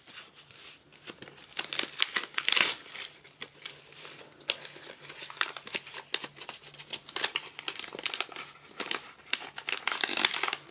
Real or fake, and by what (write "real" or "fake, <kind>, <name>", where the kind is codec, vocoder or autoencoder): real